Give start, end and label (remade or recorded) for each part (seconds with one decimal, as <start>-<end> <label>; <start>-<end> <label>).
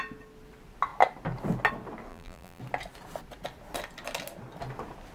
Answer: 0.0-2.1 recorded; 2.1-2.6 remade; 2.6-5.1 recorded